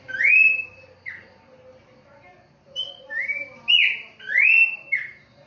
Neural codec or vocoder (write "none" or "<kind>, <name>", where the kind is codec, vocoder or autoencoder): none